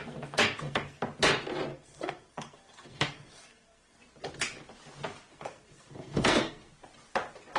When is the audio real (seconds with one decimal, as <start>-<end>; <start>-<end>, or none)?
1.0-1.7; 4.0-5.3; 6.7-7.6